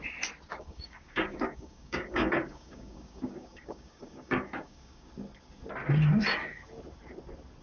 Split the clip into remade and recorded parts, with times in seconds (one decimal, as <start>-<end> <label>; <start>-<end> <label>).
0.0-0.5 recorded; 0.5-5.1 remade; 5.1-7.6 recorded